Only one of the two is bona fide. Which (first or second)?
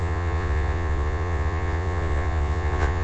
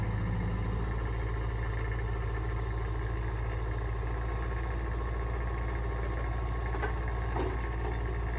second